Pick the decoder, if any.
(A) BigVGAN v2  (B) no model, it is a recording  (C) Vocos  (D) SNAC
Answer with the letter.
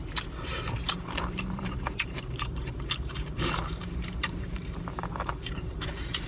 A